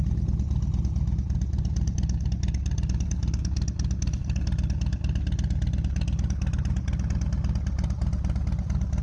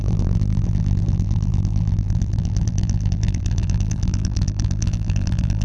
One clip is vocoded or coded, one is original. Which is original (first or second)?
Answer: first